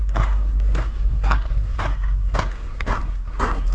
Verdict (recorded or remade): remade